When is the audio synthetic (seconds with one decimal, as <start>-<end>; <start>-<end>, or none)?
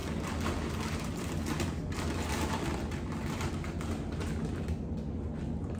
none